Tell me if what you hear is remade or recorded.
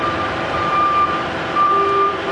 remade